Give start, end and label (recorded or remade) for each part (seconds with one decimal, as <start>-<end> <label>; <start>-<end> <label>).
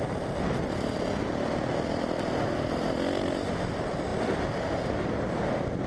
0.0-5.9 recorded